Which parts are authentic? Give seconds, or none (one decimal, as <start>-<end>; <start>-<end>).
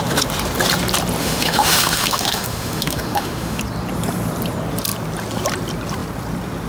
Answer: 0.0-1.2; 3.6-6.7